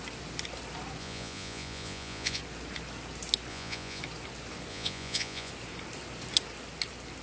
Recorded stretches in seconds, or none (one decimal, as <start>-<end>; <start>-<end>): 0.0-1.0; 2.4-3.5; 4.0-4.7; 5.5-7.2